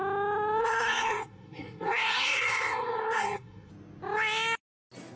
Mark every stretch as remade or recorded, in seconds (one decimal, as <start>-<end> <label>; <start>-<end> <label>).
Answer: 0.0-0.6 recorded; 0.6-3.7 remade; 3.7-5.2 recorded